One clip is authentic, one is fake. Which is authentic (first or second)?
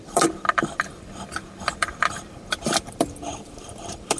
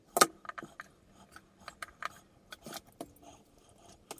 second